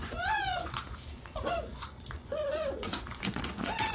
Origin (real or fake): fake